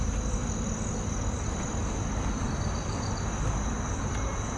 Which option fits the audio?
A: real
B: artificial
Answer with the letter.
A